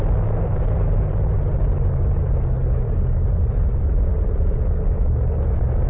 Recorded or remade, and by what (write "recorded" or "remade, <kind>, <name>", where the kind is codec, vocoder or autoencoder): recorded